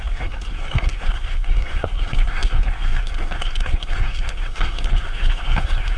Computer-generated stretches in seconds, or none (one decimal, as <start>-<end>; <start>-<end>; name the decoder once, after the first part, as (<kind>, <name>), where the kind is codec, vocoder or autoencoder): 0.0-6.0 (codec, SNAC)